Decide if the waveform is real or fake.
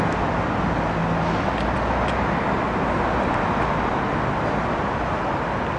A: real